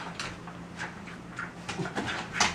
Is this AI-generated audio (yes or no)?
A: no